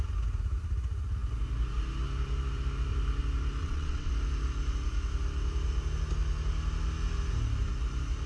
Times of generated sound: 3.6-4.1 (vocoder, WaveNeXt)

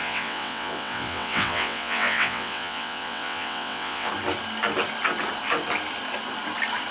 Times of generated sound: 0.0-4.1 (vocoder, WaveNeXt)

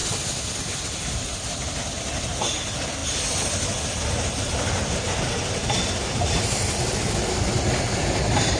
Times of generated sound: none